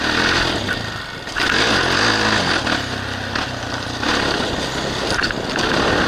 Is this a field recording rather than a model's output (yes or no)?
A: yes